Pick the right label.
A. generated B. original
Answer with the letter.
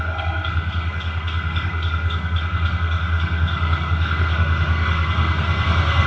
A